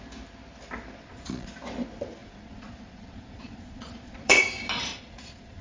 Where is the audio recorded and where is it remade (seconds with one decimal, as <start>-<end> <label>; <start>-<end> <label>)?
0.0-1.0 recorded; 1.0-1.5 remade; 1.5-2.2 recorded; 2.2-4.4 remade; 4.4-4.9 recorded; 4.9-5.6 remade